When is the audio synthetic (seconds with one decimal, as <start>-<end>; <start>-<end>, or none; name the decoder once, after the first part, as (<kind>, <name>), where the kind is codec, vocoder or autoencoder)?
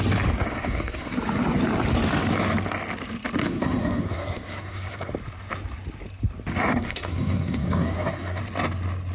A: 0.5-1.1 (codec, SNAC); 3.4-5.1; 6.7-8.4